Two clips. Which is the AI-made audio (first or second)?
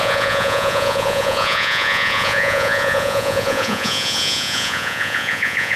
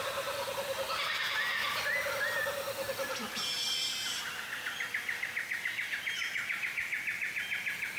first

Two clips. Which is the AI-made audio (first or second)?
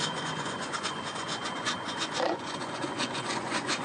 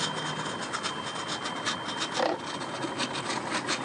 first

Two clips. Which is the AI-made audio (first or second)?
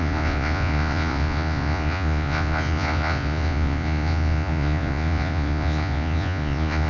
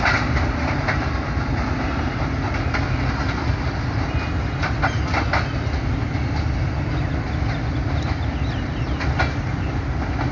first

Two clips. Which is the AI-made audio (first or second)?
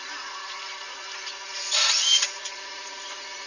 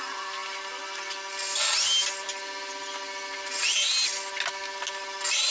first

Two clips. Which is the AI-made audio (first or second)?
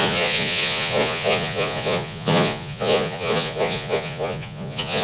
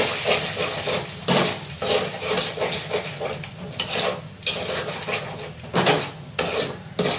first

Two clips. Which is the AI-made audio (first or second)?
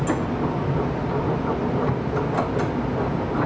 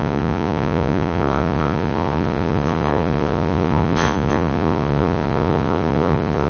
second